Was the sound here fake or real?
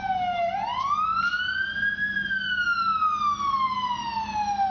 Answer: real